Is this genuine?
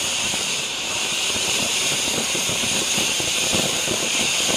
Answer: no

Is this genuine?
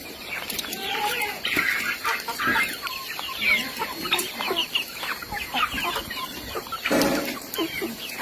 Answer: no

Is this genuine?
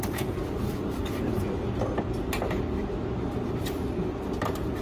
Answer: no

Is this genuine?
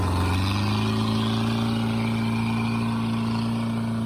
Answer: yes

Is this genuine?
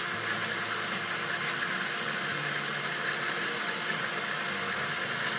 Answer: yes